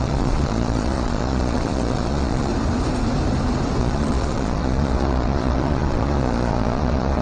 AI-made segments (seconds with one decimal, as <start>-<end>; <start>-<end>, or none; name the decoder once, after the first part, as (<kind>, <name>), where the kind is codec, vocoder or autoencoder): 0.0-2.5 (vocoder, Vocos); 3.8-7.2